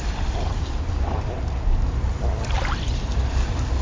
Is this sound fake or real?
real